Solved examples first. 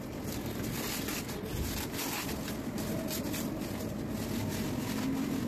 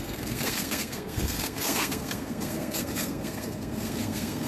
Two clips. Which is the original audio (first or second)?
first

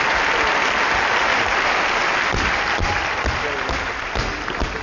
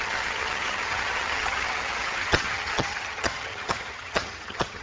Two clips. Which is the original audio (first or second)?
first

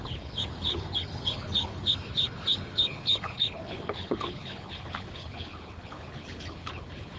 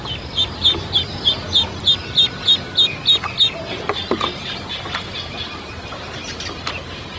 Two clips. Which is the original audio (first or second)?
second